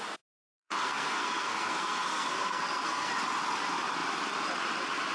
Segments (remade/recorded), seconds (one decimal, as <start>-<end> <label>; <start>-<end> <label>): 0.0-0.5 recorded; 0.5-3.1 remade; 3.1-5.1 recorded